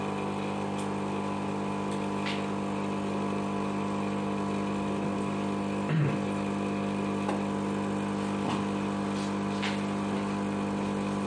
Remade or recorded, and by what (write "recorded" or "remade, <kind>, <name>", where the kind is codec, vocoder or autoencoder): recorded